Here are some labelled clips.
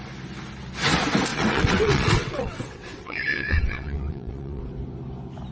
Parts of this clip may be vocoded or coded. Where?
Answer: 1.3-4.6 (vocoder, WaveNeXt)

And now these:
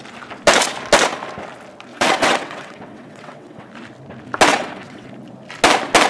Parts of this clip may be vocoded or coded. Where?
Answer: 1.9-3.7 (vocoder, WaveNeXt); 4.5-5.1